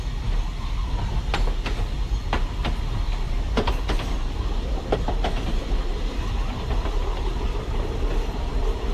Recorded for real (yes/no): yes